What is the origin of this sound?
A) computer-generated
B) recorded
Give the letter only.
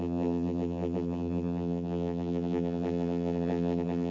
A